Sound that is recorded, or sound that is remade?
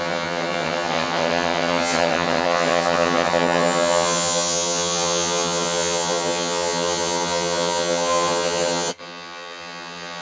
remade